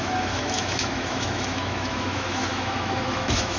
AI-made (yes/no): yes